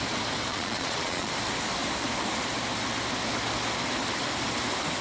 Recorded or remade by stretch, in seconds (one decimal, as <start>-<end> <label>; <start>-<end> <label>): 0.0-0.5 recorded; 0.5-1.3 remade; 1.3-5.0 recorded